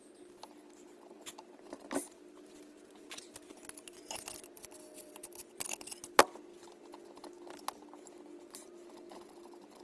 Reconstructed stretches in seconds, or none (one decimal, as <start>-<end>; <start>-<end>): none